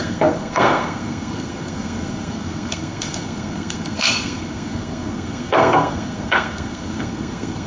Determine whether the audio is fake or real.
fake